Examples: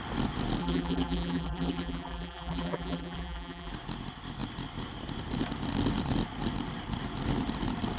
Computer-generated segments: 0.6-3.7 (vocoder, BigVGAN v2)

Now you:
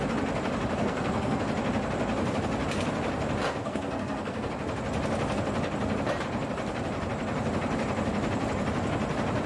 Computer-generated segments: 0.8-1.4 (codec, SNAC); 3.6-4.5

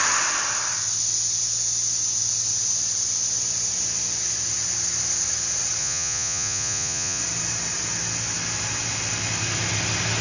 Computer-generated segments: 5.8-7.2 (vocoder, Vocos)

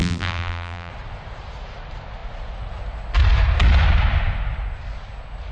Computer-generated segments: 0.0-0.9 (vocoder, BigVGAN v2)

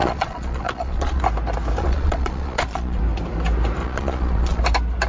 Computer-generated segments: 0.0-1.2 (vocoder, Vocos); 1.8-3.0; 3.8-4.6

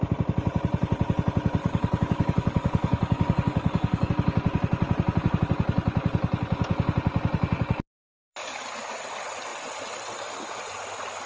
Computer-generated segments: 1.6-4.1 (codec, DAC); 8.1-8.6